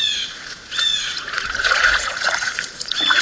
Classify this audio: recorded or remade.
remade